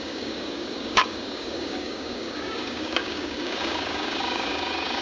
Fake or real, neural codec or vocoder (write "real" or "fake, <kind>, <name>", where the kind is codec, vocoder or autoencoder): fake, codec, DAC